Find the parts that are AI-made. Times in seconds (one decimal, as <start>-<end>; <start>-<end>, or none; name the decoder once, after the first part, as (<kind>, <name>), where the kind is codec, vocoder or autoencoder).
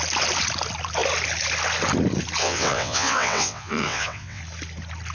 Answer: 2.4-4.4 (vocoder, WaveNeXt)